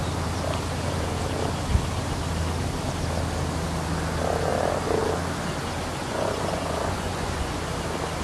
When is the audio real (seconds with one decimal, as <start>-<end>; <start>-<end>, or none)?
0.0-6.0; 7.6-8.2